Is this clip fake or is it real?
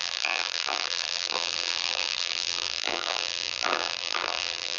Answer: fake